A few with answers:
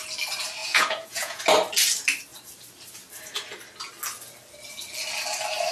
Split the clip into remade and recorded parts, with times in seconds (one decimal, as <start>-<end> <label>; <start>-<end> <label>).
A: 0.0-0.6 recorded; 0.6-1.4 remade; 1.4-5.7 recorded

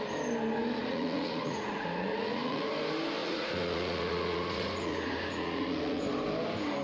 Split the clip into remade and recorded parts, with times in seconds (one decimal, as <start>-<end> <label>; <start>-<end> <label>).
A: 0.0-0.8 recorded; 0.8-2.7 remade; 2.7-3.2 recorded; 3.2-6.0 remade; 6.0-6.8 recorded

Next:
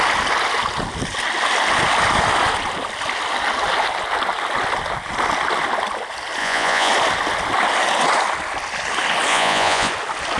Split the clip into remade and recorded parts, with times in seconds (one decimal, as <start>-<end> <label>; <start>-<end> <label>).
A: 0.0-6.4 recorded; 6.4-6.9 remade; 6.9-9.3 recorded; 9.3-9.9 remade; 9.9-10.4 recorded